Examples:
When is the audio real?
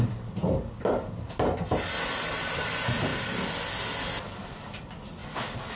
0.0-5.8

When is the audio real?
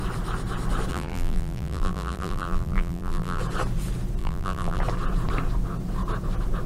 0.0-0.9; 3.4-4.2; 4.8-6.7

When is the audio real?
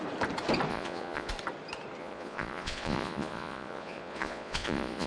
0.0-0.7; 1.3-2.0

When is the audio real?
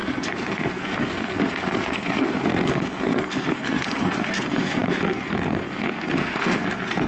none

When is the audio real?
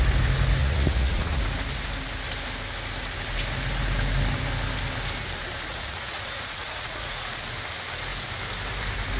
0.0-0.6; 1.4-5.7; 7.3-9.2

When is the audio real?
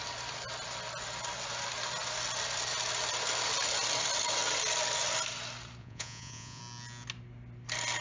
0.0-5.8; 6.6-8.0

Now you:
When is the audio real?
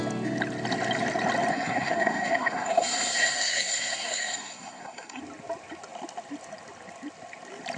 0.0-1.5; 5.2-7.8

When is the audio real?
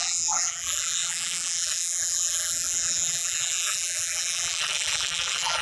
none